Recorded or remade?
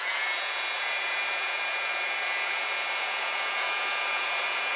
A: remade